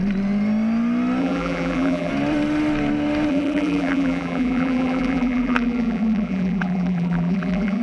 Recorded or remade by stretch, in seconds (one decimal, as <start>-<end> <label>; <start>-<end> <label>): 0.0-1.2 recorded; 1.2-2.1 remade; 2.1-3.3 recorded; 3.3-7.8 remade